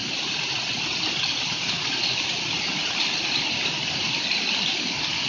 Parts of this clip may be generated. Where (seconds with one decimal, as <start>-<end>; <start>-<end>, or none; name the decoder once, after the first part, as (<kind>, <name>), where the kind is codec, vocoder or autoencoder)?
none